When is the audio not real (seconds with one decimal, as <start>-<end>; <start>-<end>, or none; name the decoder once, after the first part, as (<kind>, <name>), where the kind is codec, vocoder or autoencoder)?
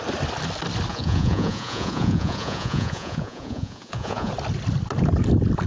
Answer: 0.9-4.3 (vocoder, Vocos)